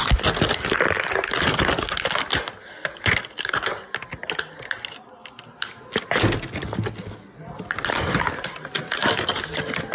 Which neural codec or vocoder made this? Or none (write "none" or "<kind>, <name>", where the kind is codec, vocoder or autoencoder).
none